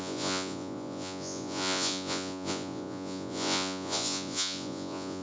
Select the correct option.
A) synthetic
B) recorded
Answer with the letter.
A